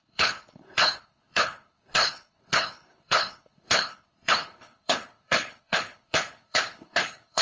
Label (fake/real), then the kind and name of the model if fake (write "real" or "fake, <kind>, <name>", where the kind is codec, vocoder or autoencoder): fake, codec, HILCodec